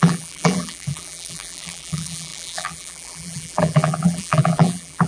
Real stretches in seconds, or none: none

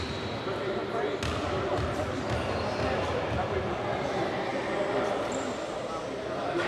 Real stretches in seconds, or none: 0.0-6.7

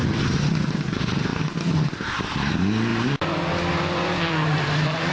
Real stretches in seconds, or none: 0.0-1.3; 2.5-2.9

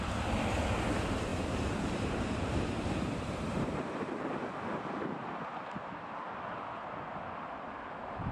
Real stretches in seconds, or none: 0.0-1.3; 4.4-8.3